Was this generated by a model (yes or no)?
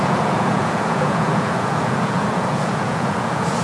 yes